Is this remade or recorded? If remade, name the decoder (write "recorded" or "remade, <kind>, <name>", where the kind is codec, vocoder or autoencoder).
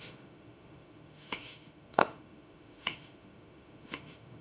remade, autoencoder, DAC-VAE